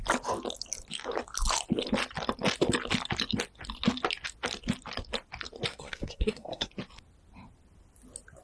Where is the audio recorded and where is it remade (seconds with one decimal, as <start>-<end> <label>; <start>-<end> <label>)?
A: 0.0-5.7 recorded; 5.7-6.7 remade; 6.7-8.4 recorded